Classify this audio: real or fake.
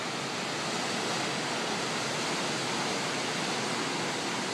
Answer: real